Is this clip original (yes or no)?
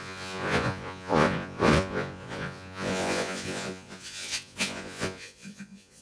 no